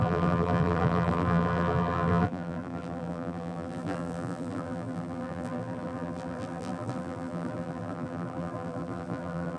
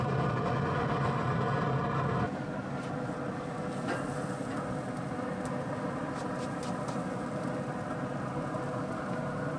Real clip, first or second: second